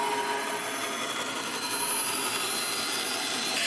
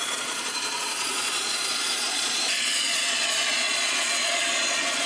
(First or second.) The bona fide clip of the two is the first